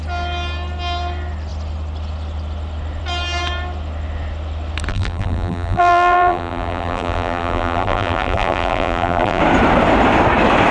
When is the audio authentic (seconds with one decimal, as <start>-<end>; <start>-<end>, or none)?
0.0-4.9; 9.4-10.7